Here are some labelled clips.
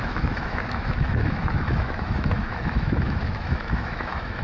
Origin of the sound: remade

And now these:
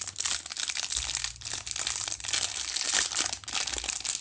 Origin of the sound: recorded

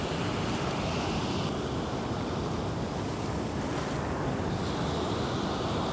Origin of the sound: recorded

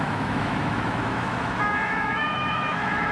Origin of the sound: remade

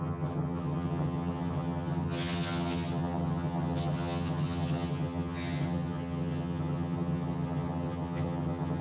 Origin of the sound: remade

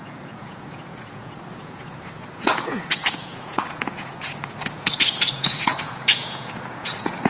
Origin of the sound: remade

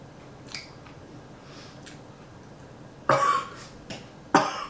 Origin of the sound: recorded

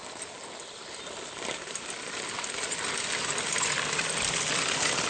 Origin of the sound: recorded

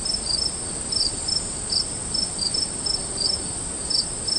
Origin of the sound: recorded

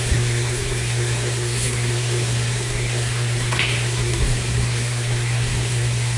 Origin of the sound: remade